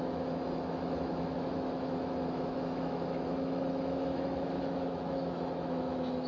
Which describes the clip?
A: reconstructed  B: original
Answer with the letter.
A